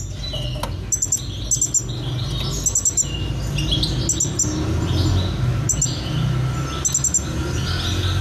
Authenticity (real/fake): real